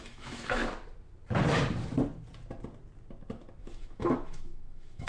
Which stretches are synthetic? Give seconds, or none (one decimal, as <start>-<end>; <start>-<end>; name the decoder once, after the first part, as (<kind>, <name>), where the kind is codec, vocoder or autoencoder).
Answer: 0.0-0.6 (autoencoder, DAC-VAE); 3.6-5.1